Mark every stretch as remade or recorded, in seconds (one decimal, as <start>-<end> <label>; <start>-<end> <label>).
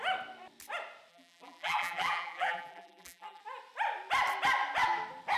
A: 0.0-1.1 recorded; 1.1-3.4 remade; 3.4-5.4 recorded